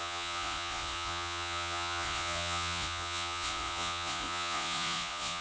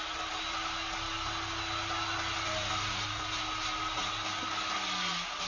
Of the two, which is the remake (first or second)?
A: first